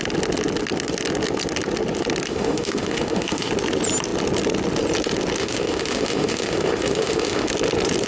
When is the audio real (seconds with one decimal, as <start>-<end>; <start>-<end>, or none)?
0.0-2.3; 3.5-5.4; 7.5-8.1